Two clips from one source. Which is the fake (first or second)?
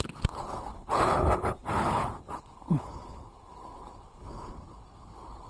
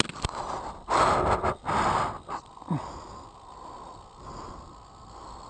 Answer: first